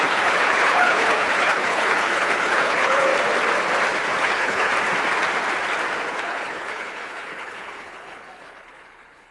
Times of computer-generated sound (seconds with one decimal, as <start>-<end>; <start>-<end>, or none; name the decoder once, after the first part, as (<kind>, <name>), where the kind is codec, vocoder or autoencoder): 0.0-3.1 (codec, HILCodec); 4.2-4.7; 6.2-9.3